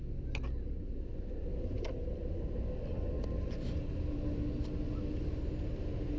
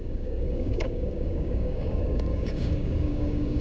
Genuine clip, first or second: first